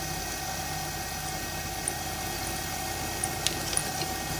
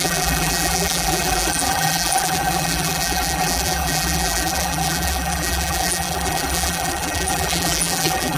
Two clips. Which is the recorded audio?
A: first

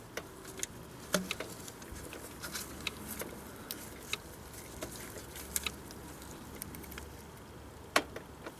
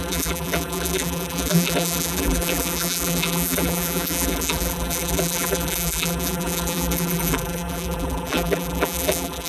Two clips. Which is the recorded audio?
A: first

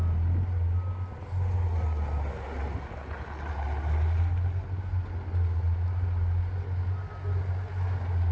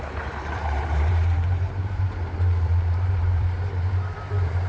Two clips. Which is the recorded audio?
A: first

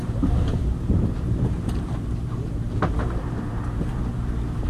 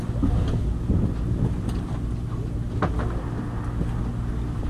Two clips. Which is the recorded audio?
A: second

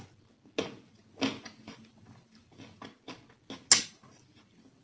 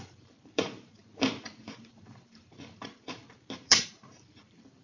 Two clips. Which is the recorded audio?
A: first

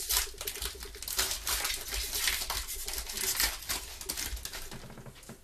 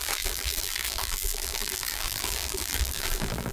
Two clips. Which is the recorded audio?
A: first